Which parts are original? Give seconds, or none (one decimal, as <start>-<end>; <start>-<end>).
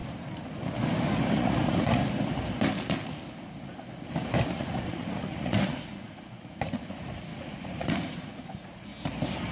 0.0-1.3; 2.0-4.5; 8.9-9.5